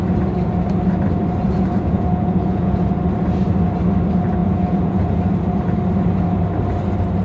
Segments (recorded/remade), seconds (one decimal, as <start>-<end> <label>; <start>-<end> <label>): 0.0-1.4 recorded; 1.4-2.9 remade; 2.9-4.4 recorded; 4.4-5.2 remade; 5.2-7.2 recorded